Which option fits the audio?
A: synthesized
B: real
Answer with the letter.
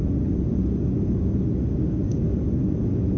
B